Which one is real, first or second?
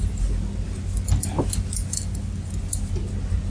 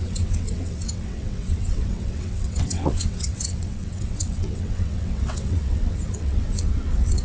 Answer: first